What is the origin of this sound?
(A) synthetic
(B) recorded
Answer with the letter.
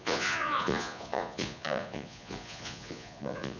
A